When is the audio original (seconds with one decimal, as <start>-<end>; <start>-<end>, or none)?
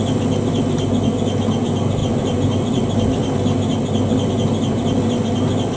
0.0-5.8